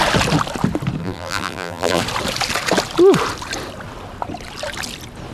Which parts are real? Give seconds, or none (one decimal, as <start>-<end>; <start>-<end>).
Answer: 0.0-1.0; 2.0-5.3